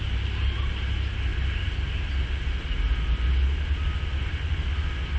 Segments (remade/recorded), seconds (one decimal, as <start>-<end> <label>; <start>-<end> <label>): 0.0-5.2 recorded

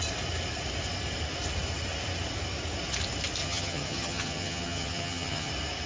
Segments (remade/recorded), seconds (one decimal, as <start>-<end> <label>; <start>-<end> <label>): 0.0-3.4 recorded; 3.4-5.5 remade; 5.5-5.9 recorded

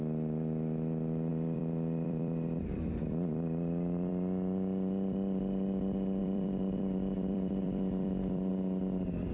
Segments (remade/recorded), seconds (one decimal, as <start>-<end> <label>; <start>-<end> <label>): 0.0-1.3 recorded; 1.3-4.1 remade; 4.1-6.2 recorded; 6.2-8.5 remade; 8.5-9.3 recorded